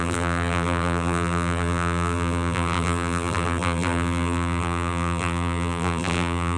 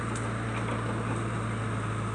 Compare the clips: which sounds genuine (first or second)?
second